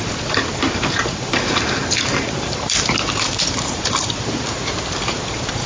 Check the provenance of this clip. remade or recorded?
remade